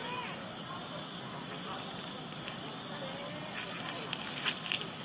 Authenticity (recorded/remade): recorded